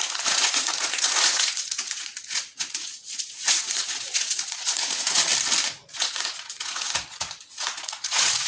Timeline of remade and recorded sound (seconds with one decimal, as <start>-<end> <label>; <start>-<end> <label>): 0.0-5.3 remade; 5.3-6.0 recorded; 6.0-8.5 remade